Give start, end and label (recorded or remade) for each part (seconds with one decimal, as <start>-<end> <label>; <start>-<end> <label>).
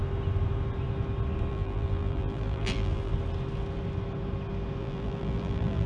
0.0-1.5 recorded; 1.5-3.1 remade; 3.1-4.8 recorded; 4.8-5.9 remade